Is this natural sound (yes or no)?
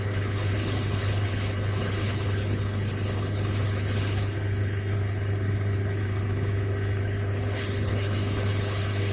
no